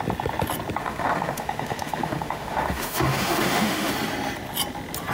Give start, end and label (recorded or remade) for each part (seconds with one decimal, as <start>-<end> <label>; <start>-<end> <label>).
0.0-0.8 recorded; 0.8-3.9 remade; 3.9-5.1 recorded